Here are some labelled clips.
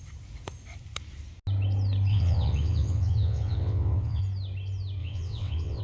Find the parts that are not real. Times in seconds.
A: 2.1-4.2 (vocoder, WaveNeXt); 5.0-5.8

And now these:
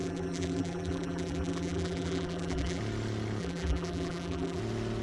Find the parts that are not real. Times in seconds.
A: 0.0-2.8 (vocoder, BigVGAN v2); 3.4-4.6

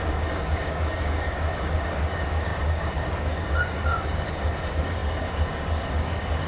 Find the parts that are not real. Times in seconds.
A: 0.0-6.5 (codec, DAC)

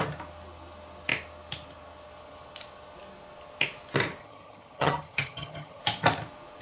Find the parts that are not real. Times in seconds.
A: 4.2-5.8 (vocoder, HiFi-GAN)

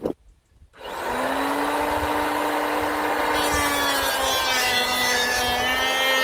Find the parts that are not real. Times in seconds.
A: 4.6-5.4 (autoencoder, DAC-VAE)

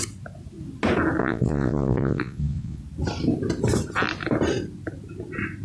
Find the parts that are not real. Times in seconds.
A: 1.2-2.8 (vocoder, Vocos)

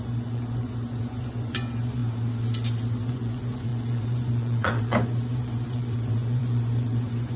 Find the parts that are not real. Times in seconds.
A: 0.0-2.0 (vocoder, Vocos); 3.1-7.4